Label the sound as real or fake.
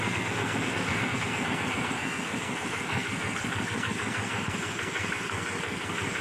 fake